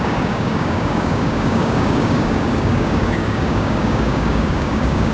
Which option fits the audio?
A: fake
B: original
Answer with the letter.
A